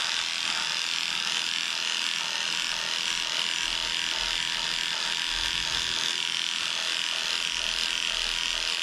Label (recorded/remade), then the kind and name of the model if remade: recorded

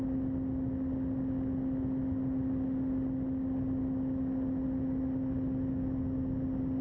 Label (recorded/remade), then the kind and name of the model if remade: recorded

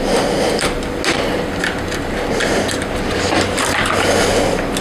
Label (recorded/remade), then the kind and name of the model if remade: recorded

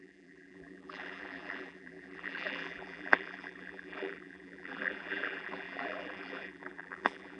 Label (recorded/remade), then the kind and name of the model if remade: remade, vocoder, BigVGAN v2